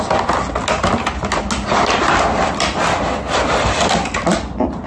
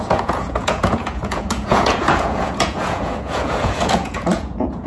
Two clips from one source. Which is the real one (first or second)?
first